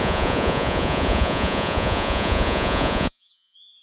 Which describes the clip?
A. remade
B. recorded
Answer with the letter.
A